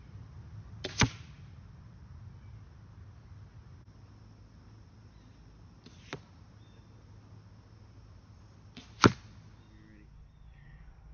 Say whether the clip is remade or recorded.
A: recorded